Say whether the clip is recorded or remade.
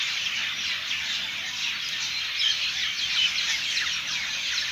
recorded